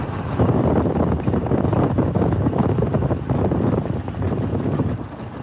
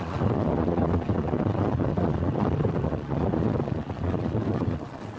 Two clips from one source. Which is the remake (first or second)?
second